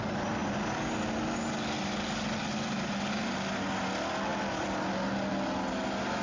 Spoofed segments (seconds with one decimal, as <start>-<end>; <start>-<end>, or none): none